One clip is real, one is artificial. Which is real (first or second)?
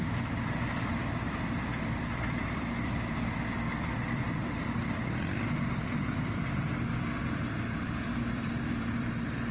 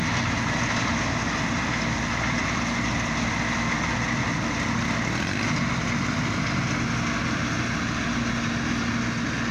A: second